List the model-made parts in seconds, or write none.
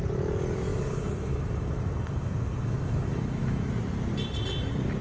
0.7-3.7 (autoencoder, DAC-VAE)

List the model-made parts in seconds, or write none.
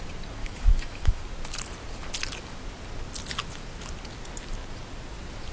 0.4-1.2 (autoencoder, DAC-VAE)